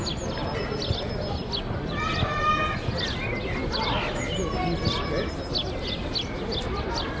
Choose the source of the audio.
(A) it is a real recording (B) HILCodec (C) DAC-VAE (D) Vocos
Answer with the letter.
A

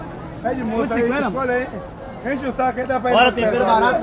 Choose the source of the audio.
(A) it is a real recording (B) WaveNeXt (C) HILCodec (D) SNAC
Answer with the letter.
A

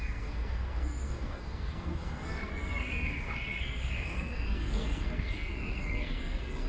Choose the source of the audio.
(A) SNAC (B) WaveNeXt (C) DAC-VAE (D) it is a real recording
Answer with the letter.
A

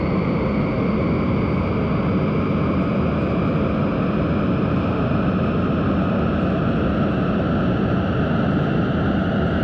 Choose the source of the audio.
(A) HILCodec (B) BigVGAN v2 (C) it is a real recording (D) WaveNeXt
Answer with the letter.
C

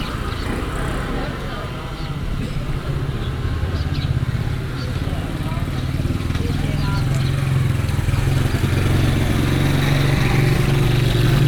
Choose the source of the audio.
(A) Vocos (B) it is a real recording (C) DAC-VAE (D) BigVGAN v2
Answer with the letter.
B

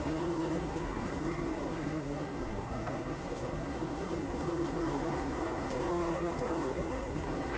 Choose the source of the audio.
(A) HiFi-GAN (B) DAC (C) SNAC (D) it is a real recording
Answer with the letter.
C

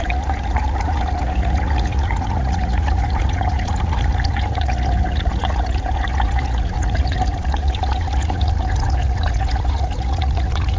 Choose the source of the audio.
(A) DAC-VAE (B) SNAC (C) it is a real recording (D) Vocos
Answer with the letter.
D